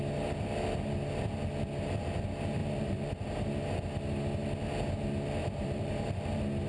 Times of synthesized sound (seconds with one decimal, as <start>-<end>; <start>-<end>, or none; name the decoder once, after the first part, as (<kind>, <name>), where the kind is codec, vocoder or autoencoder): 2.6-3.4 (vocoder, BigVGAN v2); 5.4-6.2